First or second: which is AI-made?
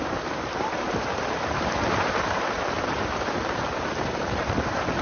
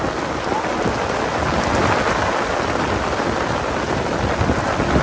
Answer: first